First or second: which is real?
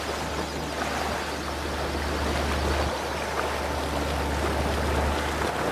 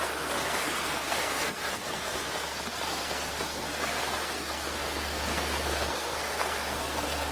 first